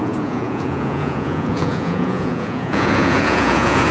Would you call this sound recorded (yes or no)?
no